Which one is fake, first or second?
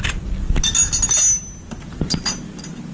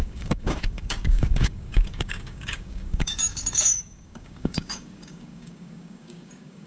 second